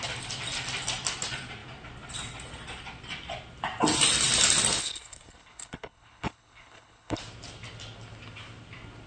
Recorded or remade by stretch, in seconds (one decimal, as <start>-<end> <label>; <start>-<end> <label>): 0.0-4.8 recorded; 4.8-7.2 remade; 7.2-9.1 recorded